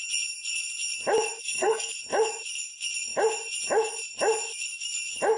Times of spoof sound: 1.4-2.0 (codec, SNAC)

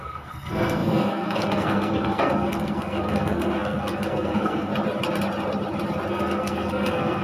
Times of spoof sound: 0.0-4.7 (codec, SNAC); 6.1-7.2

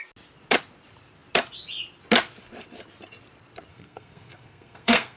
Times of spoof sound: 3.7-5.2 (codec, SNAC)